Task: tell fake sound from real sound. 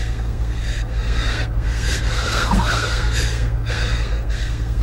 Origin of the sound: fake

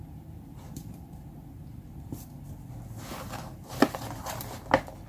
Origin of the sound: real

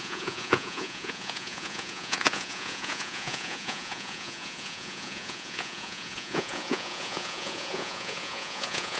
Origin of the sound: fake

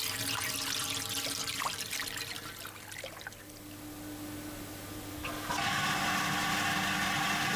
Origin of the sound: real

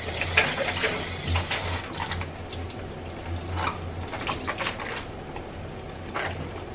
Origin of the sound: real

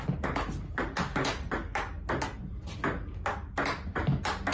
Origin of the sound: real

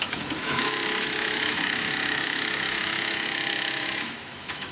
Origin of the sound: fake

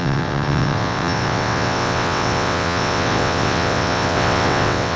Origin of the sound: fake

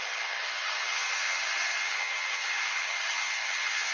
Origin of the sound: fake